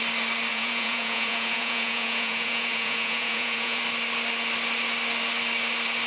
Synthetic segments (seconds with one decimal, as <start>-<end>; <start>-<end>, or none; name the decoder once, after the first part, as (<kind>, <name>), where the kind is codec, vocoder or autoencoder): 0.5-3.8 (vocoder, Vocos)